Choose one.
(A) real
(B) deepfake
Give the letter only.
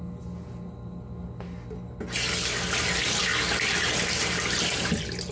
A